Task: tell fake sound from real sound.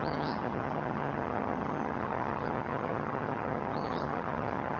fake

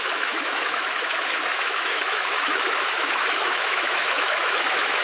fake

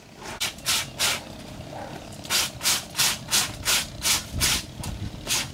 fake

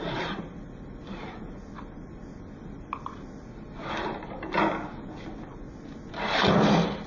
real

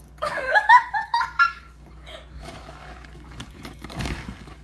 fake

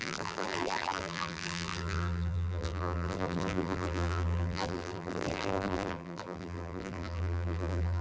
fake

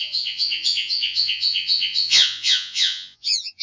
fake